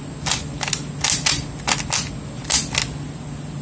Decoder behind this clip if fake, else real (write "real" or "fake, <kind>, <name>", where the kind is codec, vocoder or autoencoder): real